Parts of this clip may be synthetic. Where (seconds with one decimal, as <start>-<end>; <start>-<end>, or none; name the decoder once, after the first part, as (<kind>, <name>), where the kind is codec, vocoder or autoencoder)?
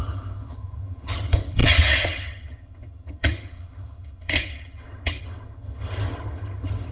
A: 0.0-6.9 (vocoder, HiFi-GAN)